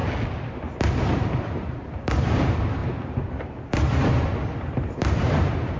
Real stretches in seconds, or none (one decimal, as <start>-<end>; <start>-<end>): 0.0-1.0